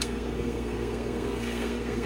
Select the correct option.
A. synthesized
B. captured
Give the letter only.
A